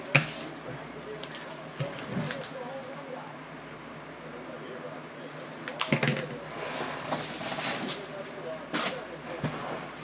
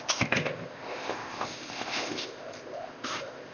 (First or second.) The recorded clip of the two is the first